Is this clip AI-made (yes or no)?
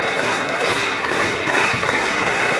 yes